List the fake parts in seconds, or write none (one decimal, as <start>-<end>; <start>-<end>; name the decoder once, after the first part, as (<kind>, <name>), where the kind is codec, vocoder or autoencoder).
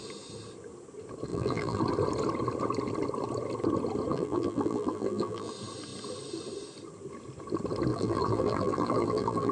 1.3-1.8 (vocoder, BigVGAN v2); 4.1-5.5; 7.9-9.5